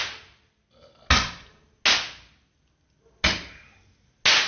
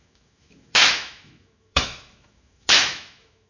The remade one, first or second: second